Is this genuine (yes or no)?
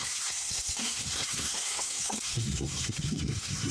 no